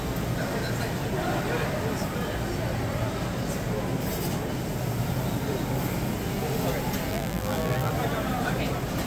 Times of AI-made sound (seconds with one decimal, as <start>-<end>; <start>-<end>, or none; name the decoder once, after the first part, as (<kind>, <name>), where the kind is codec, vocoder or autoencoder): 7.1-7.9 (vocoder, BigVGAN v2)